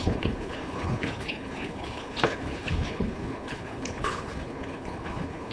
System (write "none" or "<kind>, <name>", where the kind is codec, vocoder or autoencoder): codec, HILCodec